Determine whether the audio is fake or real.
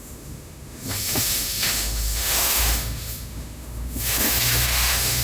fake